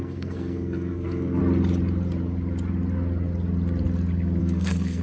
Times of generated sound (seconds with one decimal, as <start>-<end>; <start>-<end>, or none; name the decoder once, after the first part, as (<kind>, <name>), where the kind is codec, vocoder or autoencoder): 0.0-1.4 (codec, SNAC); 4.4-5.0